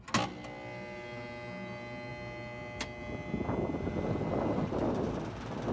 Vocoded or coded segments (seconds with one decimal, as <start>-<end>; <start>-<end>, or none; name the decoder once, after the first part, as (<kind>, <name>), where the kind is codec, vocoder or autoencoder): none